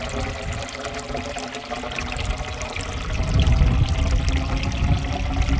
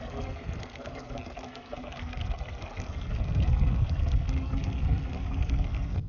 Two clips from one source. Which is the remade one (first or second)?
second